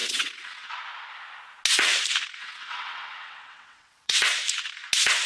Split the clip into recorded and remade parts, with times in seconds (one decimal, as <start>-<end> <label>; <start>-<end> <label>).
0.0-0.7 remade; 0.7-2.4 recorded; 2.4-4.2 remade; 4.2-5.3 recorded